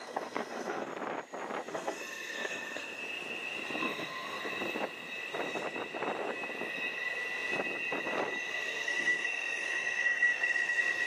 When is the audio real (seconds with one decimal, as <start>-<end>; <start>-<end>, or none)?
0.9-1.7; 3.0-3.8; 4.4-8.5